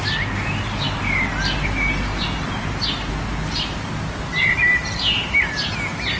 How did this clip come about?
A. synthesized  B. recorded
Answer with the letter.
B